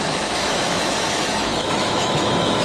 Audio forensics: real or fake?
fake